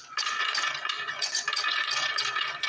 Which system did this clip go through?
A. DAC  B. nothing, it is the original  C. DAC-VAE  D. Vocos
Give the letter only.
D